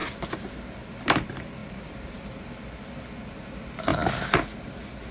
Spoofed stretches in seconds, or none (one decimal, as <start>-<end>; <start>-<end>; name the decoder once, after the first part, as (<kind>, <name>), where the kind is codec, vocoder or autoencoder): none